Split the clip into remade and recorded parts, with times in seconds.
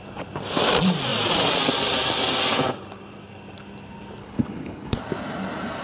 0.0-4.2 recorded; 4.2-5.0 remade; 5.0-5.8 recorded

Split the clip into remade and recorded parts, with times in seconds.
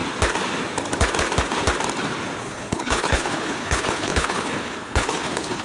0.0-2.4 recorded; 2.4-5.6 remade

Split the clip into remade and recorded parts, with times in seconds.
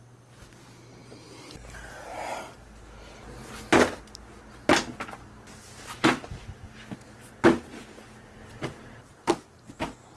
0.0-10.2 recorded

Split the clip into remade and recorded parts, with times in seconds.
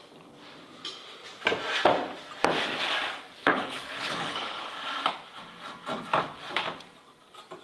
0.0-3.4 recorded; 3.4-4.7 remade; 4.7-7.6 recorded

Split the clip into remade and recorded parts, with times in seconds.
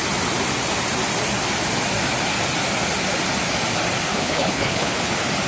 0.0-4.1 recorded; 4.1-5.1 remade; 5.1-5.5 recorded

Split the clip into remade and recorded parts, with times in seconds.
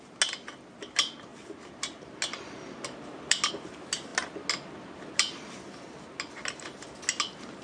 0.0-7.6 recorded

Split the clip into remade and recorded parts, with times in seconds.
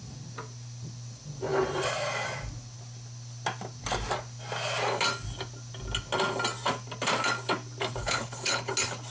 0.0-8.0 recorded; 8.0-8.7 remade; 8.7-9.1 recorded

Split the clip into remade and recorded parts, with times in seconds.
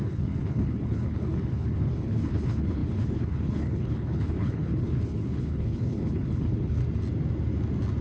0.0-6.8 remade; 6.8-8.0 recorded